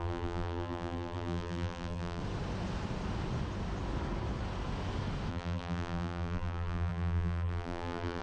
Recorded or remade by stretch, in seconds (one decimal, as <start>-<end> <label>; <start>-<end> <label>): 0.0-2.2 remade; 2.2-5.3 recorded; 5.3-8.2 remade